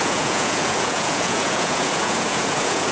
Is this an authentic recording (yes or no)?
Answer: no